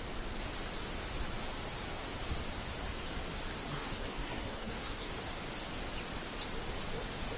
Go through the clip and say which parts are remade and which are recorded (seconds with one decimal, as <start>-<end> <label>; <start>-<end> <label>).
0.0-3.7 recorded; 3.7-5.1 remade; 5.1-7.4 recorded